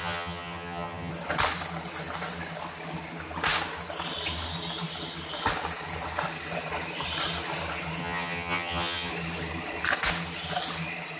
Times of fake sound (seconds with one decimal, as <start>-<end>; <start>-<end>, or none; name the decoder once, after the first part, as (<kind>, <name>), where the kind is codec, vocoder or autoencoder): 0.0-1.1 (vocoder, HiFi-GAN); 8.0-9.1